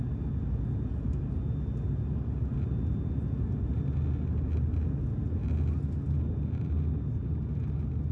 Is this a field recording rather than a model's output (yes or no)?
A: yes